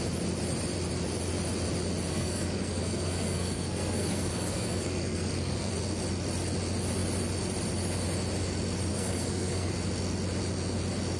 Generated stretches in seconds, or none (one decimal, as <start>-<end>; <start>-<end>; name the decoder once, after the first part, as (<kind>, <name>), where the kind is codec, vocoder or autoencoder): 2.1-5.7 (codec, SNAC); 8.9-9.7